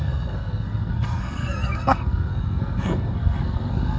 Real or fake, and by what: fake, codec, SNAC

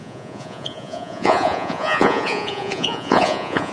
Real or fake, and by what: fake, vocoder, Vocos